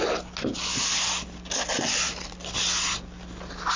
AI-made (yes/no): no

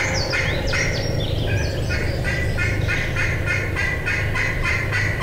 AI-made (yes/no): no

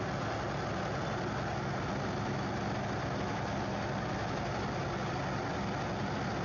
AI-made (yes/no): no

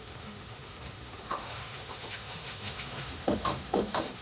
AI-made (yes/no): yes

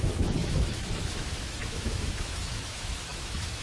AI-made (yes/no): yes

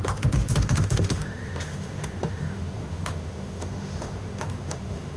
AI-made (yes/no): yes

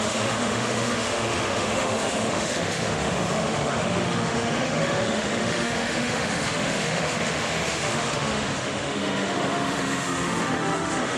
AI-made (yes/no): yes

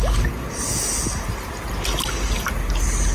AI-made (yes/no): no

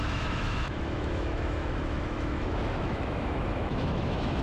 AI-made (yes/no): yes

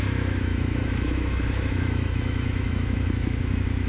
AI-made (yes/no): yes